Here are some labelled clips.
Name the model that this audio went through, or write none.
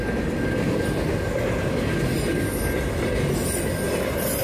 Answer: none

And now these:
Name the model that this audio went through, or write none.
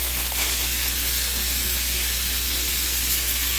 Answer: codec, SNAC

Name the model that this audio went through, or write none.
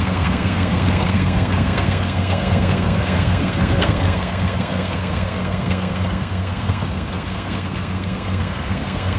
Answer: codec, SNAC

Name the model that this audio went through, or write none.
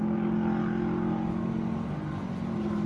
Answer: none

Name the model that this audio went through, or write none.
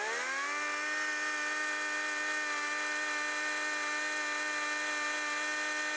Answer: none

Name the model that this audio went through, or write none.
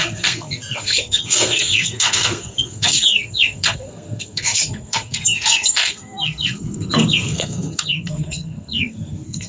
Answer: codec, SNAC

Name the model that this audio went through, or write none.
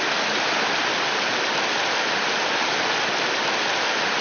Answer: none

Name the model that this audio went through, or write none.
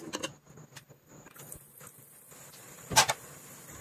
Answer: none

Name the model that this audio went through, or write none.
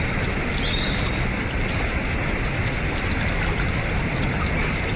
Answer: none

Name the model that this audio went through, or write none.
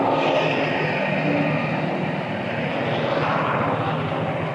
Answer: none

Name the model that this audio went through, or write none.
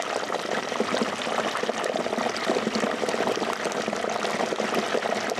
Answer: none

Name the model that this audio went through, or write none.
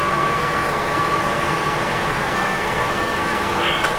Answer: codec, SNAC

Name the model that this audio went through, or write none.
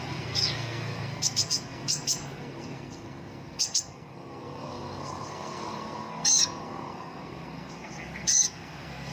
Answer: codec, SNAC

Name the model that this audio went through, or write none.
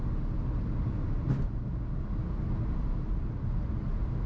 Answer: none